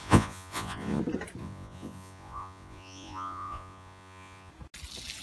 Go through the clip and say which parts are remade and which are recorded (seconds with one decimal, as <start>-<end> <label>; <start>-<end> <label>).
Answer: 0.0-1.0 remade; 1.0-1.4 recorded; 1.4-4.5 remade; 4.5-5.2 recorded